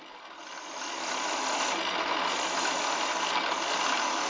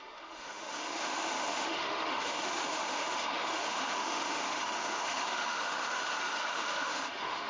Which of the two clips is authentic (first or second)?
first